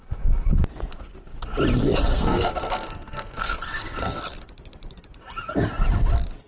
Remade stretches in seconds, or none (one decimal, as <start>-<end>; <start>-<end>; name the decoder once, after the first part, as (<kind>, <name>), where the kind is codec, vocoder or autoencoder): 2.1-4.2 (codec, SNAC)